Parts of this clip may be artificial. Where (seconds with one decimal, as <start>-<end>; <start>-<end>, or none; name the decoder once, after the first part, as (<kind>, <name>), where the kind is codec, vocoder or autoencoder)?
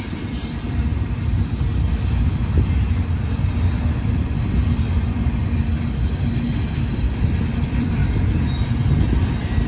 0.0-0.9 (vocoder, BigVGAN v2); 4.0-8.0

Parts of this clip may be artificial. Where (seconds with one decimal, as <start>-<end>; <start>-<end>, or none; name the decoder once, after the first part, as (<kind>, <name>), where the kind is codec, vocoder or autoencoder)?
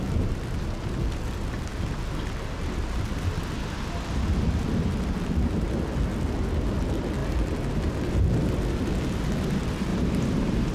9.9-10.7 (vocoder, BigVGAN v2)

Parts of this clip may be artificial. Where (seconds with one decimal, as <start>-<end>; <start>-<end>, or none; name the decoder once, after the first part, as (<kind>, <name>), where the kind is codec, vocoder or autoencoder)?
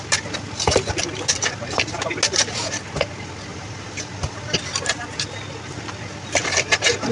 3.5-4.4 (vocoder, BigVGAN v2)